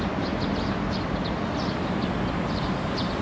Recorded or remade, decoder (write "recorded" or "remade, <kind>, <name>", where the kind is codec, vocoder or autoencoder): recorded